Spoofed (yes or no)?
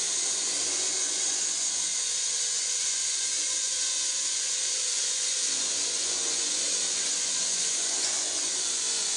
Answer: yes